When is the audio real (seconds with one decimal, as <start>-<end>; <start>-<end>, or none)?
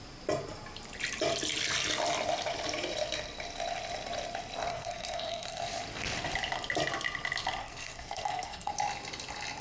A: 0.0-4.7; 5.6-7.6; 8.7-9.6